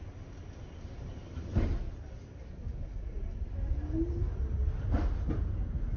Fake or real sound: real